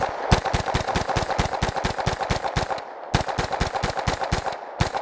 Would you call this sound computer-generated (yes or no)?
no